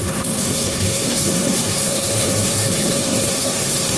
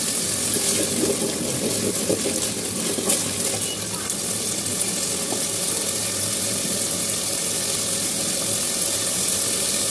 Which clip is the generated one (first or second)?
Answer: first